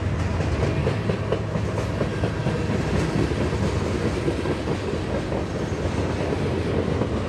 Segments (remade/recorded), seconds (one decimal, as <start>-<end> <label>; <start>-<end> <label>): 0.0-7.3 recorded